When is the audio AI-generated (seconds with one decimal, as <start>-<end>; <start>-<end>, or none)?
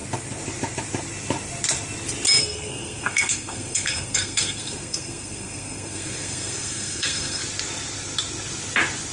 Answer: 2.4-7.4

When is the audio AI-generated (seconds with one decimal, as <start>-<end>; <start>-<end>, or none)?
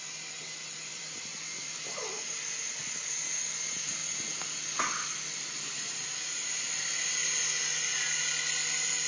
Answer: 0.9-3.1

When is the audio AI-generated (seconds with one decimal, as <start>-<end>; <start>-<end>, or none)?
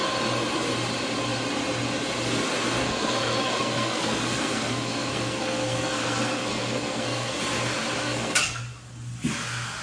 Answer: 2.8-7.4; 8.0-8.6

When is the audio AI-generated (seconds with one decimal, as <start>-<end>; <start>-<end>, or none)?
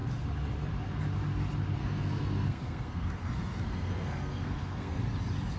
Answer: 1.8-5.0